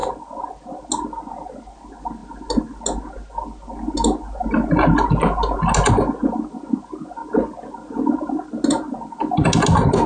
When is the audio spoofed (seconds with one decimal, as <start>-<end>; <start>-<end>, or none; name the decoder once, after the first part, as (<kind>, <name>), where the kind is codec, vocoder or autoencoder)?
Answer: none